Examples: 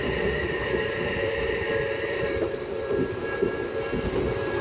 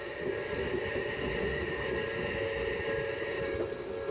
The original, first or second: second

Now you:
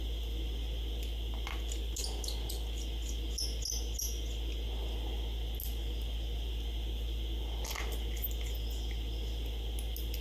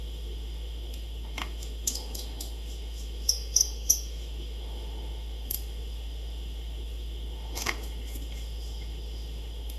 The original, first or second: first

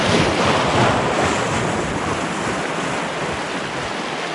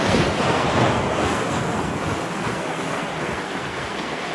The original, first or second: first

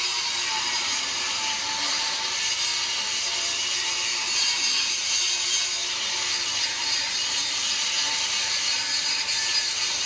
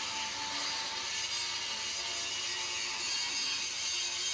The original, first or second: second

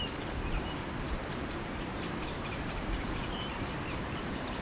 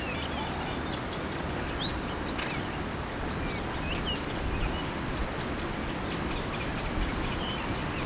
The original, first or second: second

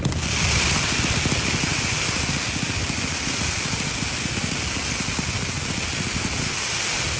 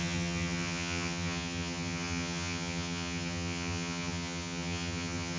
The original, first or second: first